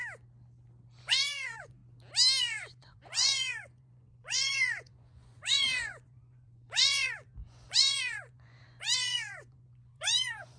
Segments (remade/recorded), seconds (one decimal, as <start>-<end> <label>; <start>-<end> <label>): 0.0-1.0 recorded; 1.0-1.8 remade; 1.8-2.4 recorded; 2.4-10.6 remade